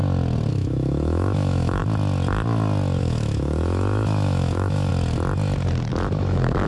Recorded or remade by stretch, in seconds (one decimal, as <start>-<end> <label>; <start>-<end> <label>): 0.0-0.5 recorded; 0.5-1.8 remade; 1.8-3.0 recorded; 3.0-4.9 remade; 4.9-5.9 recorded; 5.9-6.7 remade